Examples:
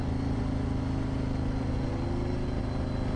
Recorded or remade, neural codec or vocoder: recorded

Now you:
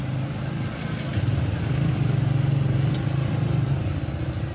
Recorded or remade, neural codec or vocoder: recorded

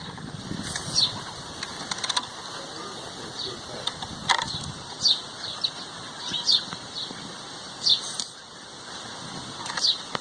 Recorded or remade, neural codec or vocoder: recorded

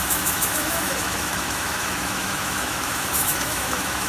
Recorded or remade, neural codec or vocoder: remade, autoencoder, DAC-VAE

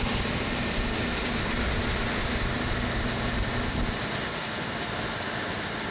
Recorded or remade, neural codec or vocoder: recorded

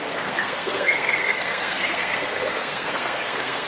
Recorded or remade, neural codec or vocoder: remade, codec, SNAC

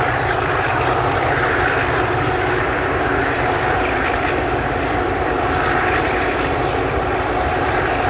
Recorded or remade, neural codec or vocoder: remade, vocoder, BigVGAN v2